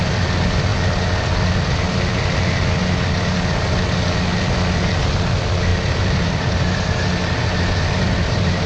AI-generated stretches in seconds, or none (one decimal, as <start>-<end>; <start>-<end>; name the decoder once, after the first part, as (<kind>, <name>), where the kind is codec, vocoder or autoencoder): 5.7-8.7 (vocoder, BigVGAN v2)